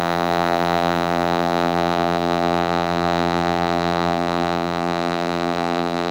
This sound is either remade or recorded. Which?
remade